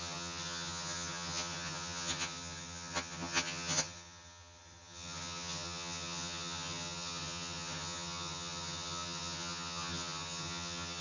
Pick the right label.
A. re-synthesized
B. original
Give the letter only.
A